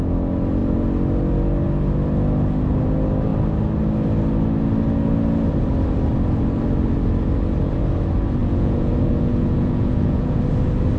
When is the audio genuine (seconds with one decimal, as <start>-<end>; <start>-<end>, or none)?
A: 0.0-8.4; 10.4-11.0